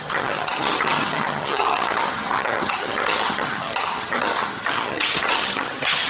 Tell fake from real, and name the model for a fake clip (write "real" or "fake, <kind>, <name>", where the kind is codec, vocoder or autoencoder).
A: fake, vocoder, HiFi-GAN